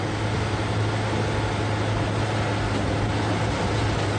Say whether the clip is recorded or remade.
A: recorded